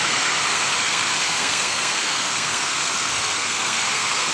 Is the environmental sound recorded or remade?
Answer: remade